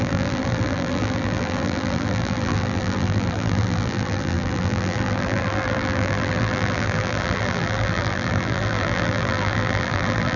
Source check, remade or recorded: remade